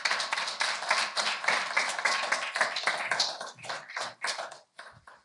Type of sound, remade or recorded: remade